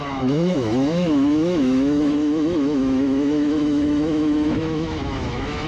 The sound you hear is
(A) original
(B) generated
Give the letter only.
B